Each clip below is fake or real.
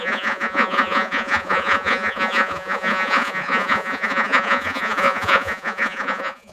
fake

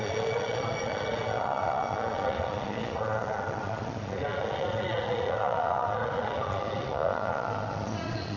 fake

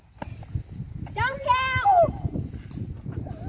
real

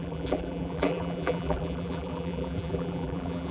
fake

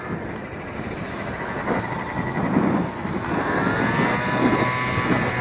real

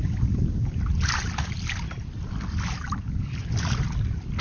real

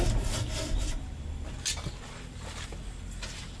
real